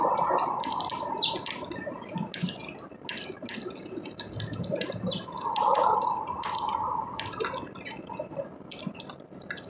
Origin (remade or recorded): recorded